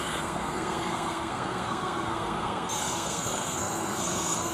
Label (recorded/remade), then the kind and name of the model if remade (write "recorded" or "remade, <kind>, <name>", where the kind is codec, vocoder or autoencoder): remade, codec, SNAC